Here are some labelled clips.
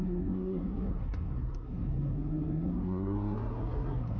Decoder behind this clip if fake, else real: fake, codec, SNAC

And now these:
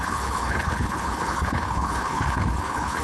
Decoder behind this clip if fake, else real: fake, codec, HILCodec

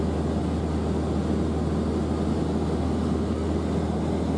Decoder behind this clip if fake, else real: real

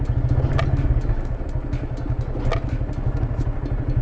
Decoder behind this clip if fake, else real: real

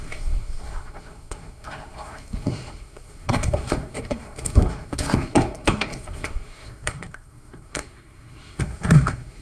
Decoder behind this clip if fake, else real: fake, codec, SNAC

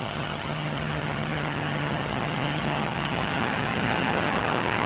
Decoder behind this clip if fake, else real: fake, vocoder, HiFi-GAN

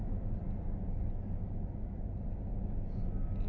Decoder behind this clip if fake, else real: real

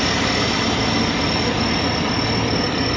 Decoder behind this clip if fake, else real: real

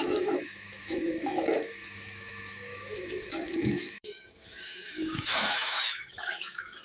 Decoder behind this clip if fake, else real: fake, autoencoder, DAC-VAE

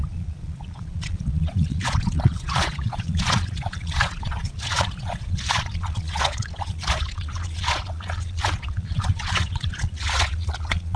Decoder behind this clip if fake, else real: fake, vocoder, Vocos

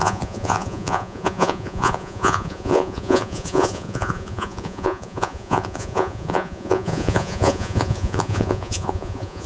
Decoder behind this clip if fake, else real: fake, vocoder, Vocos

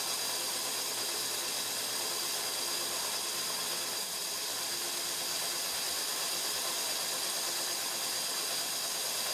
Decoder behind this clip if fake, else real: real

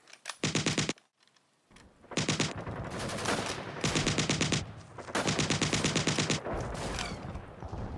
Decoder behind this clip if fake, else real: real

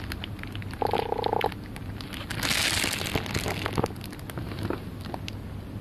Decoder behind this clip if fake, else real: real